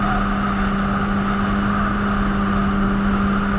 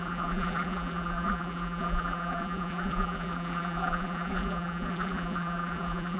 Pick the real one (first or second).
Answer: first